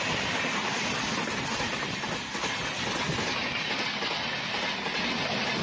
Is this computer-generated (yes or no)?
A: no